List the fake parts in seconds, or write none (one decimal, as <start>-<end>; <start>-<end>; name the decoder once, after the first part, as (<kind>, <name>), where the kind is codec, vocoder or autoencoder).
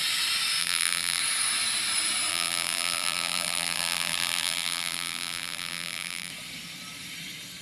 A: 0.6-1.2 (vocoder, BigVGAN v2); 2.3-6.3